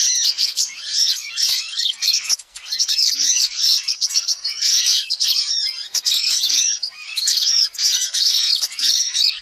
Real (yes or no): no